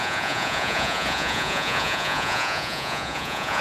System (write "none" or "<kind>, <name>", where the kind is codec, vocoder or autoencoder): vocoder, Vocos